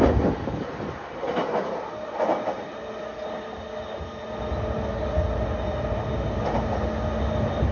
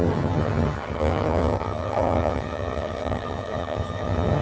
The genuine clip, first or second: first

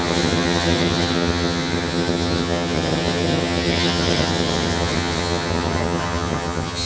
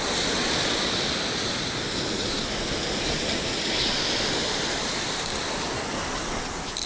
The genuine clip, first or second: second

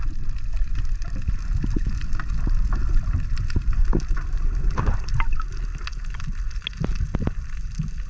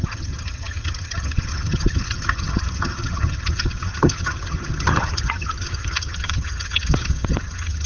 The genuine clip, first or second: first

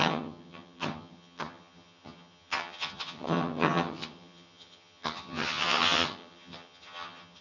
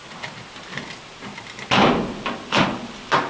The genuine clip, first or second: second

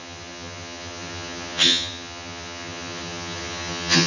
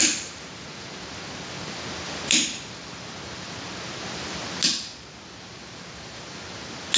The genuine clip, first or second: second